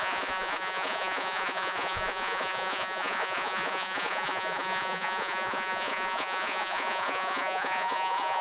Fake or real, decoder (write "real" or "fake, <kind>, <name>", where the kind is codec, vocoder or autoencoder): fake, vocoder, Vocos